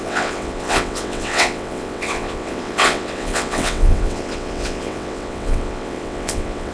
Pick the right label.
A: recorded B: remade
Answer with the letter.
B